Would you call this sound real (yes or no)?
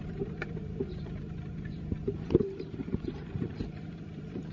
no